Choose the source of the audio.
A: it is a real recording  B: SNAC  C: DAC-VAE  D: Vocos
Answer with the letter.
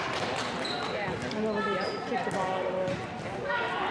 A